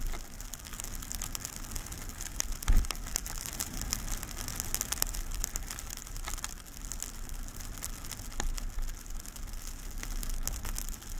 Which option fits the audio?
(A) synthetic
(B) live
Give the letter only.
B